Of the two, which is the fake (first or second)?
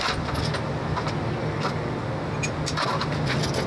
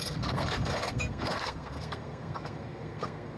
second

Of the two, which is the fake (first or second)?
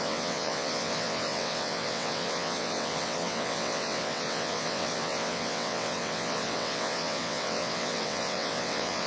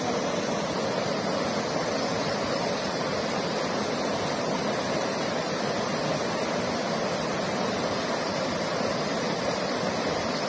first